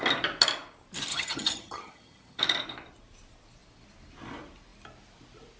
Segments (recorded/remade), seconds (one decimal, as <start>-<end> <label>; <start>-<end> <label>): 0.0-1.1 recorded; 1.1-2.4 remade; 2.4-5.6 recorded